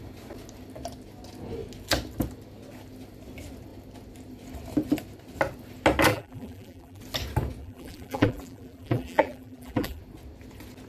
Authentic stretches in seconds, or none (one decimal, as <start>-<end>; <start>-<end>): 0.0-6.1; 7.0-7.6; 10.0-10.9